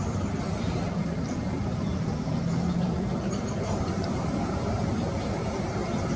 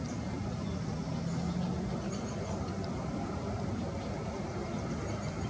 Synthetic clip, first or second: first